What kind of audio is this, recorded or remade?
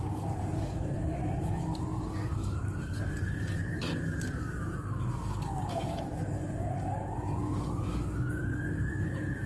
remade